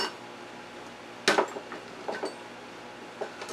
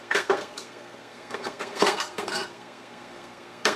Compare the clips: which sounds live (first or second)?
first